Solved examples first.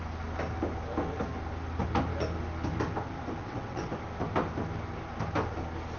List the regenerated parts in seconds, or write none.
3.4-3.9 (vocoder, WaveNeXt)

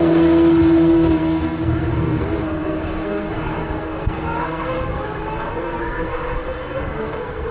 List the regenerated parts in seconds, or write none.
0.0-7.5 (codec, SNAC)

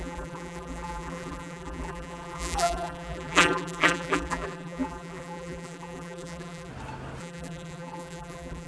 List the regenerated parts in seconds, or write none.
0.0-6.7 (vocoder, BigVGAN v2); 7.2-8.7

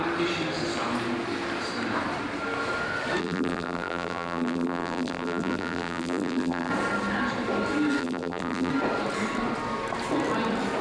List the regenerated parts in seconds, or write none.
3.2-6.7 (vocoder, BigVGAN v2); 8.0-8.7